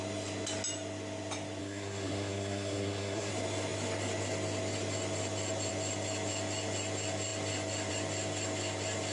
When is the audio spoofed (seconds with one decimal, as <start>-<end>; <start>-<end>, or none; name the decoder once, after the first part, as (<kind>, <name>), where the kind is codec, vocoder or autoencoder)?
1.6-3.3 (codec, SNAC)